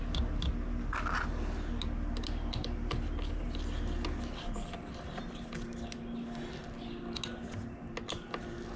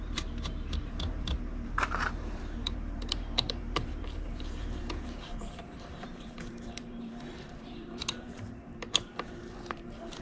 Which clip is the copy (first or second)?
second